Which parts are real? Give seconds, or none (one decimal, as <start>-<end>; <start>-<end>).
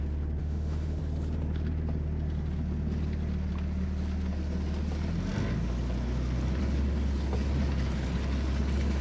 0.0-0.4; 1.0-9.0